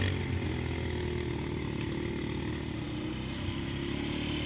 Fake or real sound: real